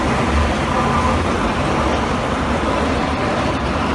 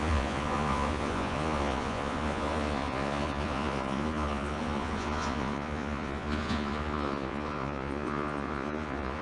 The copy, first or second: second